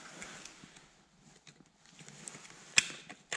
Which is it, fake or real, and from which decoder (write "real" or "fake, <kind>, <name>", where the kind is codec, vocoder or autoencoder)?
real